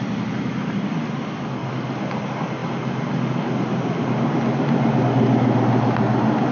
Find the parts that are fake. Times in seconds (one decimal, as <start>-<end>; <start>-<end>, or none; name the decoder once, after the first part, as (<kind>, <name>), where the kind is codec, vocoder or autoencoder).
none